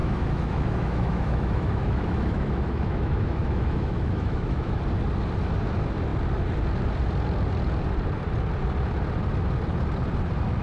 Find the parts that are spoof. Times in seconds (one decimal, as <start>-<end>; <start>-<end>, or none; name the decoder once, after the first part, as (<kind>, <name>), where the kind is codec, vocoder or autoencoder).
0.0-4.8 (autoencoder, DAC-VAE)